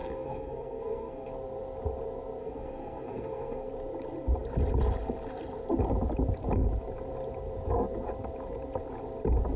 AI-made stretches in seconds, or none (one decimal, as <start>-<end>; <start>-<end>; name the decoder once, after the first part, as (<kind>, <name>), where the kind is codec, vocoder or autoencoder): 0.0-1.3 (codec, SNAC); 2.4-3.7